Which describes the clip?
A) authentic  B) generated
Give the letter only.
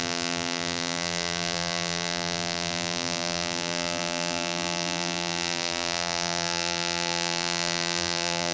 B